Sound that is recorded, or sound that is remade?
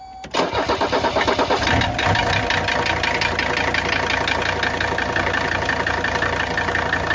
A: recorded